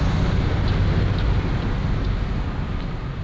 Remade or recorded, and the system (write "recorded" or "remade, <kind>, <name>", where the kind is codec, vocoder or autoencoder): recorded